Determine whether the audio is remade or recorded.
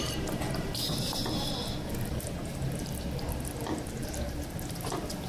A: recorded